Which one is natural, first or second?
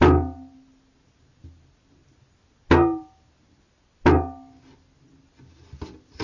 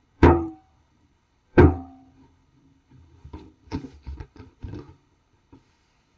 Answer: first